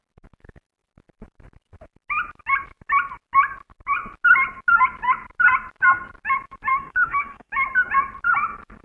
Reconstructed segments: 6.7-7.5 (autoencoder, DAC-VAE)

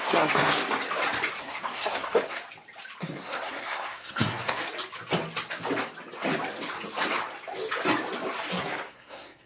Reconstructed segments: 0.0-0.6 (codec, SNAC); 1.4-2.4; 3.0-4.6; 8.6-9.5